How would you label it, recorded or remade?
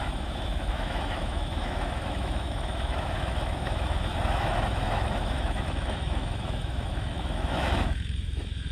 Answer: remade